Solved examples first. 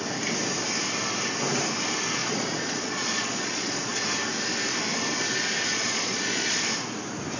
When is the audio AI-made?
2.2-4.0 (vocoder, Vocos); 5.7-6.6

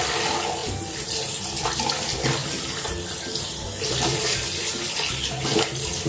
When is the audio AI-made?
0.6-1.1 (vocoder, BigVGAN v2); 2.4-6.1

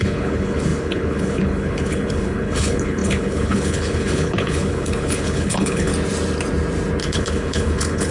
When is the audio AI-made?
0.0-5.9 (codec, HILCodec); 7.0-8.1

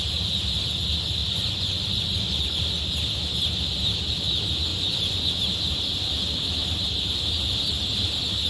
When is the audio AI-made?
1.2-2.6 (vocoder, Vocos); 4.7-5.3